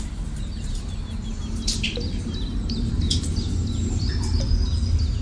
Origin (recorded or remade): recorded